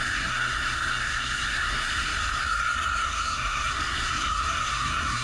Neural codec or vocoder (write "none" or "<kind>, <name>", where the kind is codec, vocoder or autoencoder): codec, SNAC